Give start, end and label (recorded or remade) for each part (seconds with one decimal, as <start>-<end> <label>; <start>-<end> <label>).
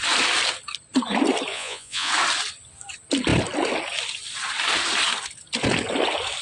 0.0-1.5 recorded; 1.5-2.1 remade; 2.1-6.4 recorded